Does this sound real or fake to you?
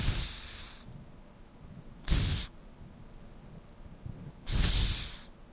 real